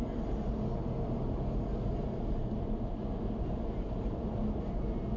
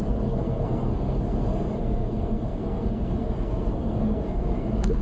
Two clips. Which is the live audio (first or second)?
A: first